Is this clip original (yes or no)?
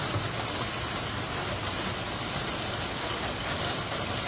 yes